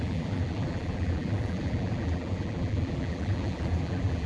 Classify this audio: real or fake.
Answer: fake